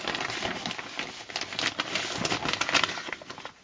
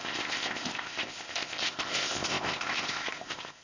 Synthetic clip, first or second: second